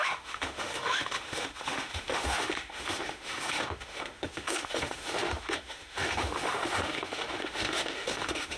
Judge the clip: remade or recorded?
remade